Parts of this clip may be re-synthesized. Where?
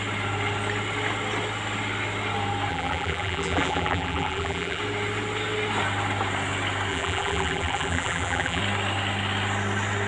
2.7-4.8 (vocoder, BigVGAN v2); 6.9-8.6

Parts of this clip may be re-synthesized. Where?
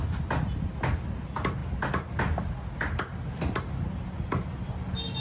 none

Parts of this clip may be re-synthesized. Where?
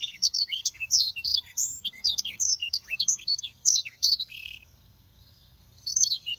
0.0-6.4 (codec, SNAC)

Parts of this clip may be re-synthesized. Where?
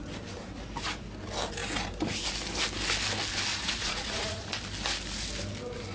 3.5-4.5 (vocoder, Vocos)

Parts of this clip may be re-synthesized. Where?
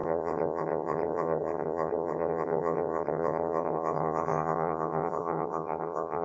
0.0-6.2 (vocoder, HiFi-GAN)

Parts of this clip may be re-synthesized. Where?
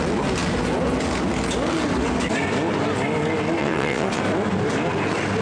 3.6-4.2 (vocoder, WaveNeXt)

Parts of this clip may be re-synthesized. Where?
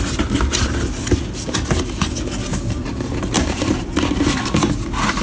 2.5-3.9 (vocoder, BigVGAN v2)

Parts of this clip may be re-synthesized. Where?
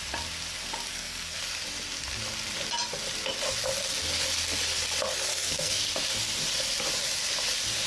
0.9-1.4 (codec, SNAC); 5.3-5.8